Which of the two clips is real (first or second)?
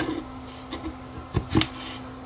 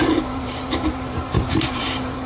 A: first